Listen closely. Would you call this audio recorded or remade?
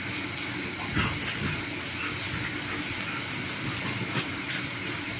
recorded